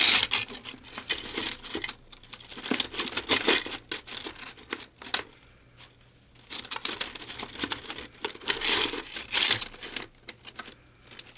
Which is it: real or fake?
real